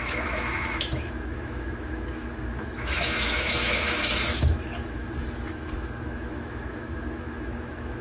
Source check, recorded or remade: remade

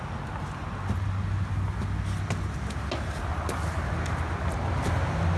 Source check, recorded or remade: recorded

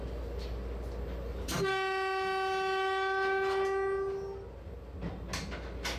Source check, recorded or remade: recorded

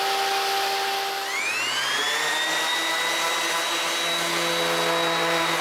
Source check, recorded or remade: recorded